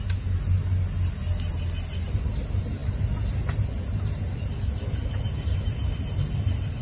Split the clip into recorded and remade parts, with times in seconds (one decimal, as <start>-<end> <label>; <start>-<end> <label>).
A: 0.0-6.8 recorded